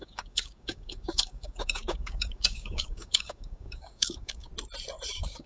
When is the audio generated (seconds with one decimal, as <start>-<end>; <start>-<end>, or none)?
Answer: 0.0-4.5; 5.1-5.5